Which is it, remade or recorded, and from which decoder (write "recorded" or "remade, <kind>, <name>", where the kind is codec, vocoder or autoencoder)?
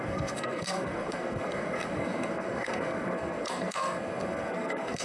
remade, codec, SNAC